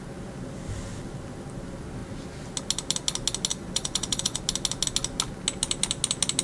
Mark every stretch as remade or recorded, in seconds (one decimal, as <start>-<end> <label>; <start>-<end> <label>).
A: 0.0-3.5 recorded; 3.5-4.4 remade; 4.4-6.4 recorded